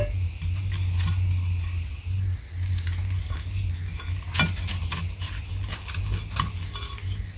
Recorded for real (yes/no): yes